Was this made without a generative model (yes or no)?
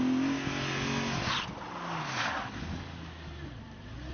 yes